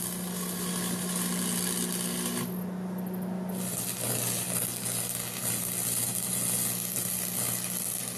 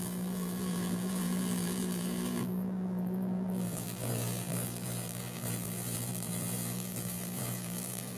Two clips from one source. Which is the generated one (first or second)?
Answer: second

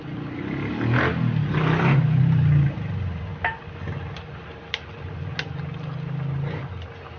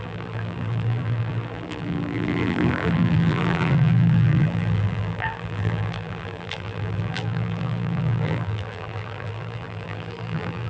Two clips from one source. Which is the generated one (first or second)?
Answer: second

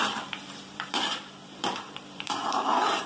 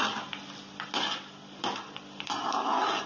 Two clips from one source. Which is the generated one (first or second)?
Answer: first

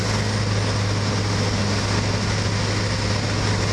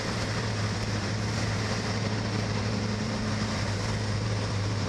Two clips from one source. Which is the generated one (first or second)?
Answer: second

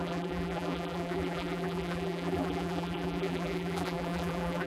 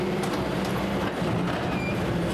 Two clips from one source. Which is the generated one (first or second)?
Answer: first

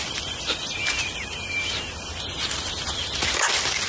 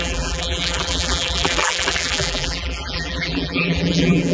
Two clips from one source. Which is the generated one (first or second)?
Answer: second